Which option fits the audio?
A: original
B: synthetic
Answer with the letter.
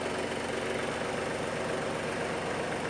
A